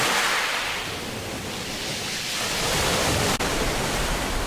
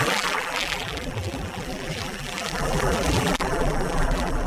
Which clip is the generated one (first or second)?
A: second